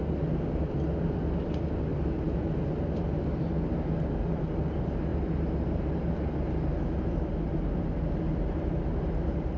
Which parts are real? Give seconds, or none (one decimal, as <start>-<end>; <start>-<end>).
0.0-9.6